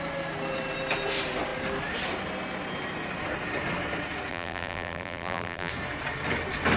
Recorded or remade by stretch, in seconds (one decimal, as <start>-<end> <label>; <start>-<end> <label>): 0.0-4.3 recorded; 4.3-5.7 remade; 5.7-6.8 recorded